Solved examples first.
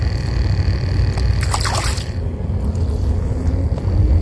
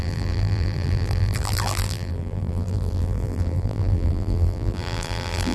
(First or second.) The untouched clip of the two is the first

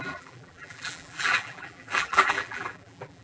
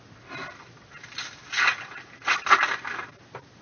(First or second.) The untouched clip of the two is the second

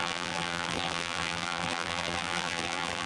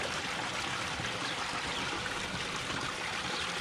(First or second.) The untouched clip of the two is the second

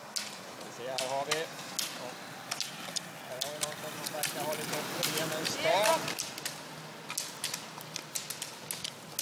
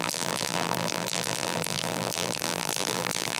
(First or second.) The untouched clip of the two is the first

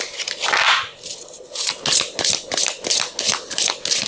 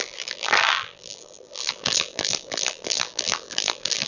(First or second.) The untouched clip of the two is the first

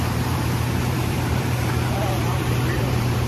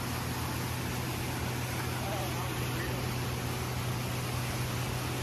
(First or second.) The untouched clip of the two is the second